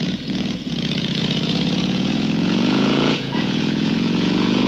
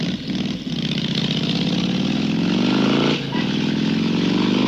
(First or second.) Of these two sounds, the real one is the second